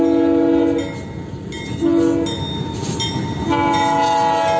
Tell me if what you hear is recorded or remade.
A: recorded